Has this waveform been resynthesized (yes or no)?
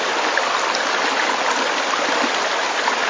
no